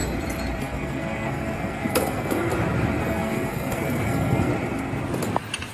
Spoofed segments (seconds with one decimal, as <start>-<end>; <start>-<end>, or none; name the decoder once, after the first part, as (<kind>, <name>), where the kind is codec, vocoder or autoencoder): 0.6-2.5 (codec, SNAC); 3.0-4.5